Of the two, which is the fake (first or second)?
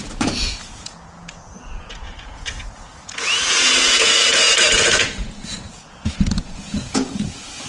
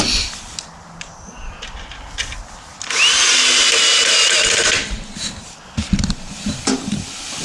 first